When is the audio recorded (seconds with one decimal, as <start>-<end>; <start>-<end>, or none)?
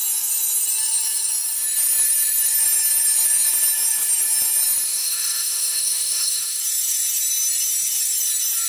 0.0-4.9; 6.6-8.7